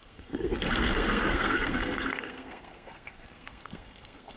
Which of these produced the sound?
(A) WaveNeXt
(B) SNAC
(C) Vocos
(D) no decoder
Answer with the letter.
B